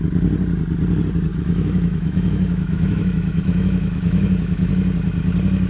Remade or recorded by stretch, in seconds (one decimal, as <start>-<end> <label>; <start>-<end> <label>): 0.0-1.3 recorded; 1.3-4.7 remade; 4.7-5.7 recorded